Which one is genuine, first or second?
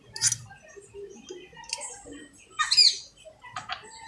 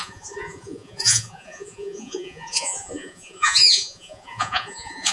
first